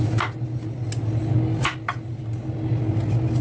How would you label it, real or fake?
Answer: real